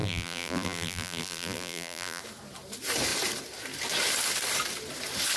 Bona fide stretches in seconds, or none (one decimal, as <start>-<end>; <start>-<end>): 2.2-5.4